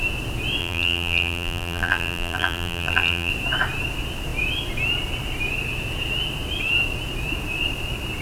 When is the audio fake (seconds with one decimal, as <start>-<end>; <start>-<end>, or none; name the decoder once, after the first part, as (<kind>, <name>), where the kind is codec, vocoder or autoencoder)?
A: 0.6-3.3 (vocoder, BigVGAN v2)